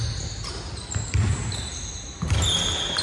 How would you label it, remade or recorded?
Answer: recorded